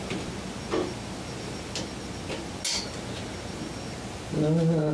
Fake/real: real